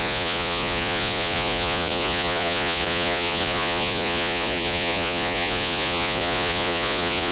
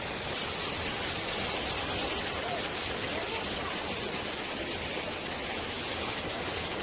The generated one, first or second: first